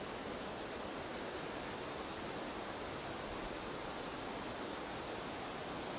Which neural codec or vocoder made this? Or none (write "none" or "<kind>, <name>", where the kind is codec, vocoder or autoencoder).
none